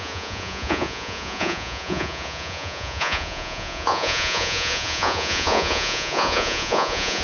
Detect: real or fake fake